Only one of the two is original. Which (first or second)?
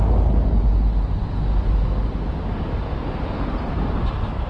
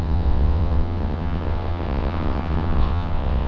first